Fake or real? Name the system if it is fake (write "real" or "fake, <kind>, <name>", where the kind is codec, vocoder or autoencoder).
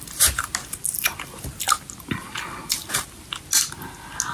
real